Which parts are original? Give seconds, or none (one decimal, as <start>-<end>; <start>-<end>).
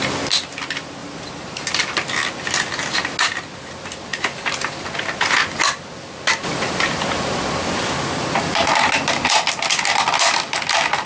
0.0-1.0; 1.9-11.1